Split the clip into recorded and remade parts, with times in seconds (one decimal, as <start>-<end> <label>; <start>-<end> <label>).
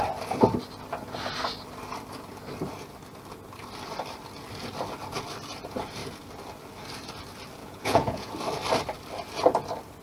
0.0-7.6 recorded; 7.6-8.3 remade; 8.3-10.0 recorded